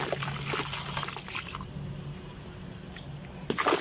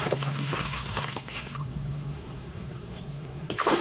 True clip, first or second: first